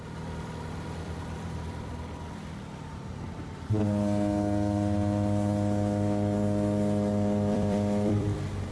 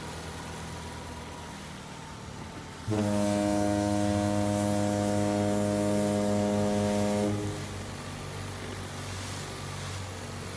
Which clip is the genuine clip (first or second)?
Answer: second